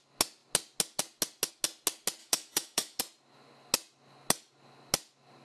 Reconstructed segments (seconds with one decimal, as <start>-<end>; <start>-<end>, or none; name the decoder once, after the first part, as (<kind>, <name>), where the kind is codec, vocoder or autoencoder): 2.2-3.0 (autoencoder, DAC-VAE)